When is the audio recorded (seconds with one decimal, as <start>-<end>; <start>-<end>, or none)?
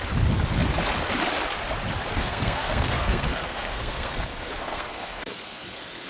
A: 0.0-2.1